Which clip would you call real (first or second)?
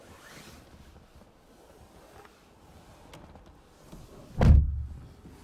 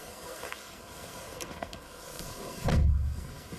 first